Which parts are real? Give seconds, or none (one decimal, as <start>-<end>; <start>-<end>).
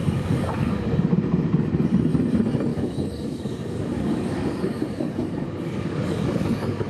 1.1-2.7